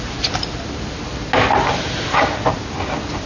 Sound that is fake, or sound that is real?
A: real